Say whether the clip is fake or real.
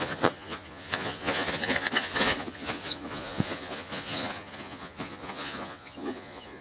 fake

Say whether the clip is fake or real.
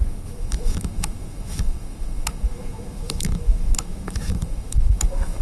fake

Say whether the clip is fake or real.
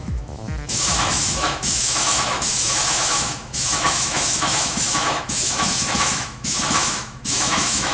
fake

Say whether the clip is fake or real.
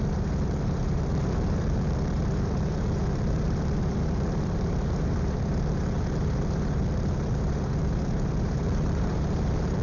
fake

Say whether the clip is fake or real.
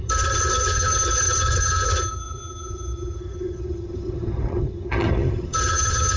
fake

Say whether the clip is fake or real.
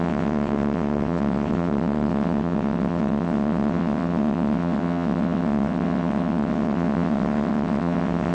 fake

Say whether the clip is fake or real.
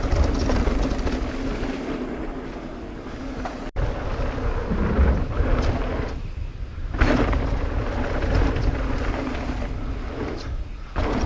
real